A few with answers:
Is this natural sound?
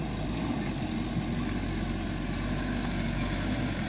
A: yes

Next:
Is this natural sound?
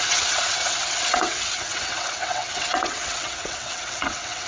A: no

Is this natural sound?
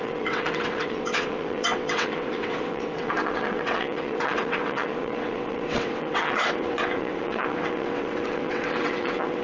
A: no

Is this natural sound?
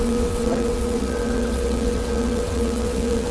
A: no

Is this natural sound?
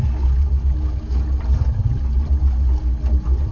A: yes